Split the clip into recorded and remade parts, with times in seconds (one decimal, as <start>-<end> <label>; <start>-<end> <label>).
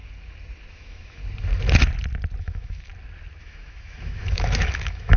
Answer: 0.0-0.7 recorded; 0.7-1.2 remade; 1.2-2.4 recorded; 2.4-2.9 remade; 2.9-3.4 recorded; 3.4-5.2 remade